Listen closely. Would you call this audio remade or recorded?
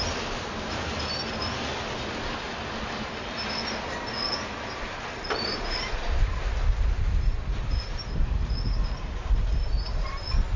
recorded